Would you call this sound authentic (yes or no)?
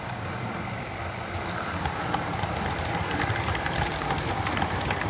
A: no